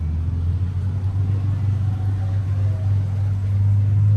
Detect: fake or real real